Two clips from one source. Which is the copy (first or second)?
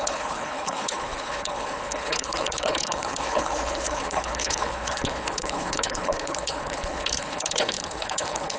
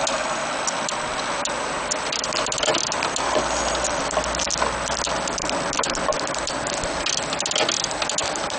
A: first